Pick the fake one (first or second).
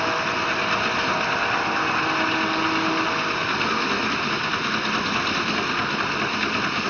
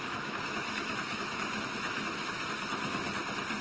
second